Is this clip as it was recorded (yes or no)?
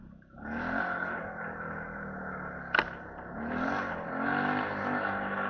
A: yes